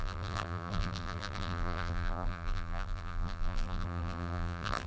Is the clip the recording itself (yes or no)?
no